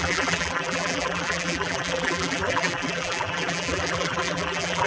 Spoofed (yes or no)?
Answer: yes